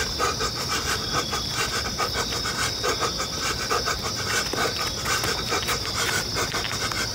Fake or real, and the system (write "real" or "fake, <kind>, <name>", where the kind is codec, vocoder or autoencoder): real